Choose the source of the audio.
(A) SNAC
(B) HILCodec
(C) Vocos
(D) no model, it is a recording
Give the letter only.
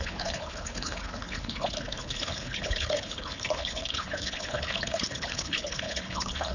B